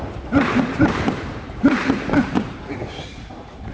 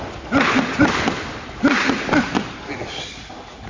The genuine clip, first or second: second